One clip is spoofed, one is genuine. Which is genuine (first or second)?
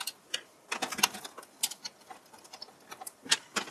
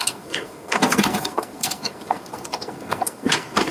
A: first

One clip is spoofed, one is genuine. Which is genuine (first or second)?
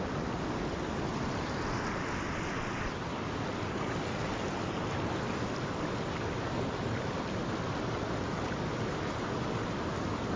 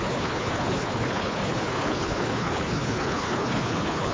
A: first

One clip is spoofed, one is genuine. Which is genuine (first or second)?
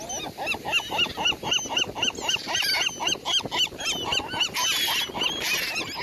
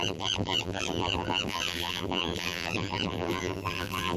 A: first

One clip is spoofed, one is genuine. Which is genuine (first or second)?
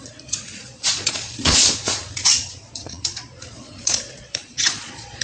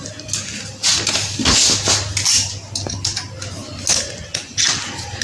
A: second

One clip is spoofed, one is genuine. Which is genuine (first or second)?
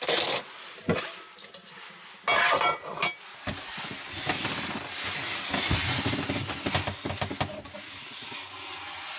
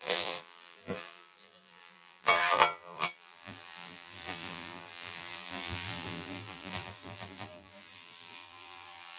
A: first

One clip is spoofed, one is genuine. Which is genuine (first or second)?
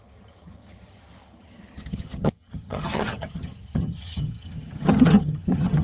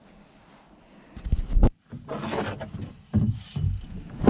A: second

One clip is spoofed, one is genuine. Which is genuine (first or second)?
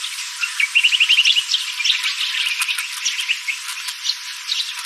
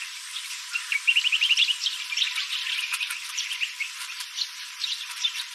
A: first